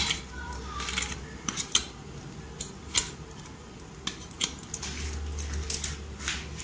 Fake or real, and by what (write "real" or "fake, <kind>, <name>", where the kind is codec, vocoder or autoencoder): real